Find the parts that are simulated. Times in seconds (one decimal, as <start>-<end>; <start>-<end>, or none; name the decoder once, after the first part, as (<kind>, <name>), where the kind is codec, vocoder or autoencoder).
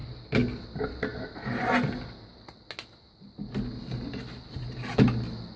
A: none